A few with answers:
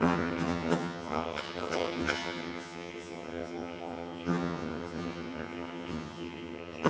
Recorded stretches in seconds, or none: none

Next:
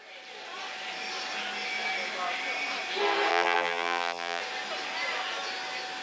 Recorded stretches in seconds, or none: 0.0-3.3; 4.4-6.0

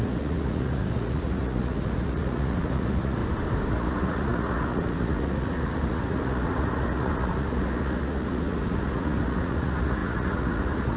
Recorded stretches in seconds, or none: 3.2-3.7